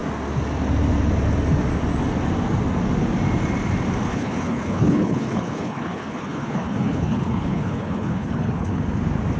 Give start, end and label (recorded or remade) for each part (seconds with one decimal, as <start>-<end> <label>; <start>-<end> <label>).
0.0-4.1 recorded; 4.1-8.8 remade; 8.8-9.4 recorded